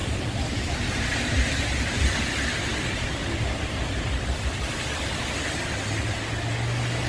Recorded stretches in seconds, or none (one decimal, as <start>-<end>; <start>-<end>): 2.1-7.1